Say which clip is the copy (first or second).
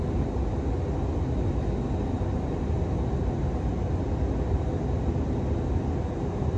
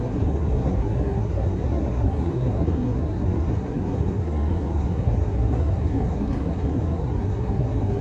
second